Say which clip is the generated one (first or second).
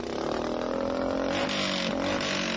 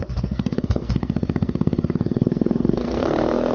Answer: second